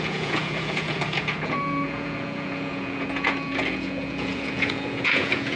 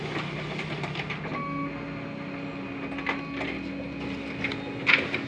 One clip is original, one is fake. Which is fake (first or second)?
first